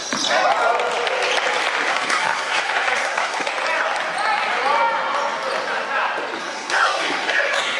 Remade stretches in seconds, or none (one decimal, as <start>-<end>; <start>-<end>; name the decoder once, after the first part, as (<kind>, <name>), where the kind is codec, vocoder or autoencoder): 1.9-3.5 (codec, SNAC); 6.4-7.8